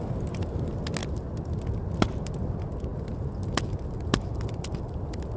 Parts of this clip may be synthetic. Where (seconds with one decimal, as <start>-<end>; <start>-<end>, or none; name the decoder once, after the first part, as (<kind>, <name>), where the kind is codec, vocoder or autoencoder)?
1.0-1.6 (vocoder, BigVGAN v2); 2.9-4.9